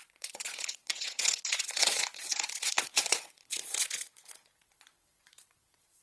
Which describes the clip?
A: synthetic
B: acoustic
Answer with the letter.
A